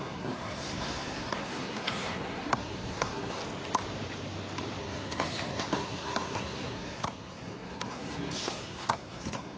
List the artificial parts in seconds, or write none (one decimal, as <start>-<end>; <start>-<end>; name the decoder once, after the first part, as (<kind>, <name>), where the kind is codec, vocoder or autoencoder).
0.0-3.4 (codec, SNAC); 4.8-9.6